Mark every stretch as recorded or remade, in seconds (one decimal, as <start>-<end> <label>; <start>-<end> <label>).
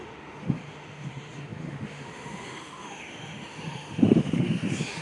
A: 0.0-5.0 remade